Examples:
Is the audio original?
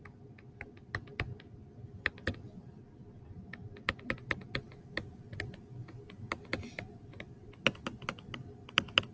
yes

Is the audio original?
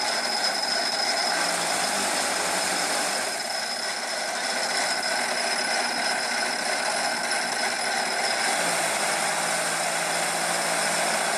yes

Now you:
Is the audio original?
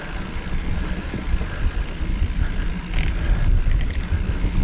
yes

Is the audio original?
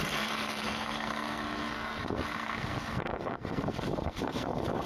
no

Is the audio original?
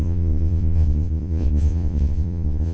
no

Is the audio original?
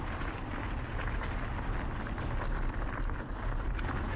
yes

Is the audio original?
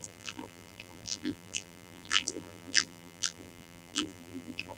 no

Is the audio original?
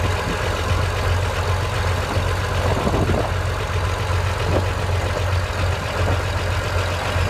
yes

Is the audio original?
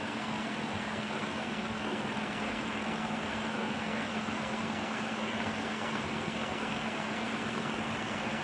no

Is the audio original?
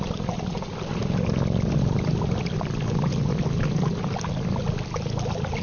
yes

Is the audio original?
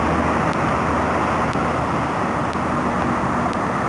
yes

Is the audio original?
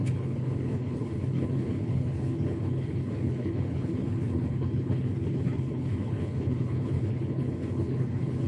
no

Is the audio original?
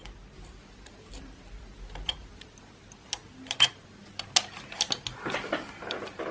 yes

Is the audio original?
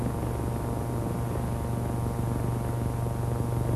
yes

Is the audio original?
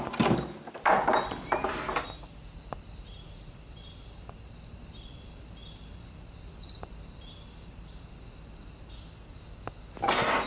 no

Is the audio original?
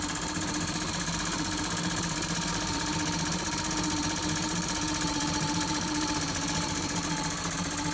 no